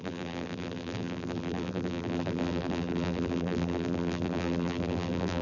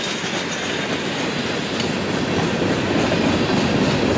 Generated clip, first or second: first